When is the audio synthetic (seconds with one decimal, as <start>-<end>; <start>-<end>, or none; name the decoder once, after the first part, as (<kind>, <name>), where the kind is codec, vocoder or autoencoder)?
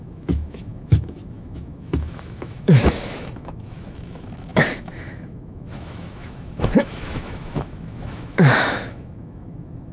0.0-9.9 (autoencoder, DAC-VAE)